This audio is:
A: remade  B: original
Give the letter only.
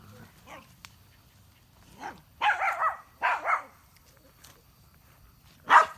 B